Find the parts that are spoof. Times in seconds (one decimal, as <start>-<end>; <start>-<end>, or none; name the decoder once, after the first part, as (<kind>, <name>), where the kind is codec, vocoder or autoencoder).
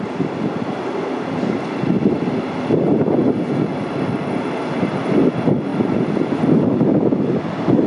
none